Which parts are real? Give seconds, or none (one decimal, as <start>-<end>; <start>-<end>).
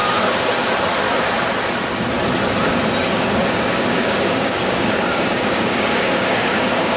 0.0-3.1